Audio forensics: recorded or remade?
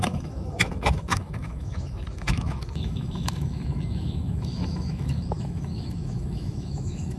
remade